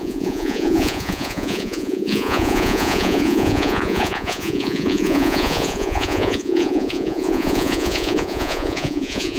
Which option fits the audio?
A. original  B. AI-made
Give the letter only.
B